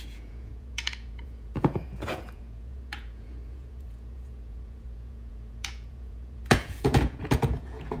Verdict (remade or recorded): remade